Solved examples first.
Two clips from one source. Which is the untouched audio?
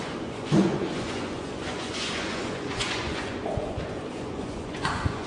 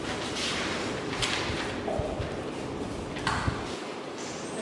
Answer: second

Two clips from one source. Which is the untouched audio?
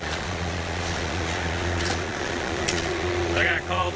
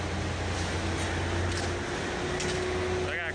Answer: second